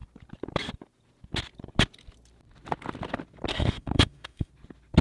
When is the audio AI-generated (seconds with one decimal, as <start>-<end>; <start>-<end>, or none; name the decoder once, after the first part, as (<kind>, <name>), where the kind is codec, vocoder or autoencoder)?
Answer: 3.5-4.5 (autoencoder, DAC-VAE)